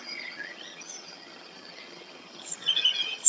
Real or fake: fake